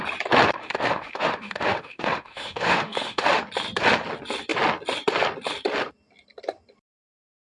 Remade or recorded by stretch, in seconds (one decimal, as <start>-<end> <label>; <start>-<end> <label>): 0.0-0.5 recorded; 0.5-3.4 remade; 3.4-7.5 recorded